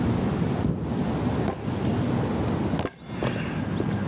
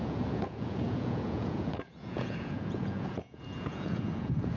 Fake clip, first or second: second